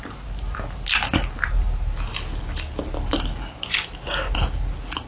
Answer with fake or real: real